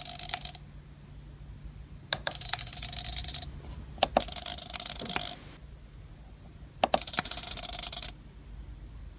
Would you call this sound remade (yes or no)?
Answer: no